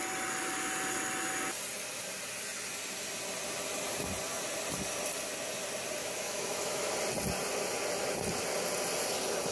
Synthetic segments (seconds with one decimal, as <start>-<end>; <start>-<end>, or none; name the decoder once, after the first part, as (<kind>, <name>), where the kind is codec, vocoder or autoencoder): 6.0-6.9 (autoencoder, DAC-VAE)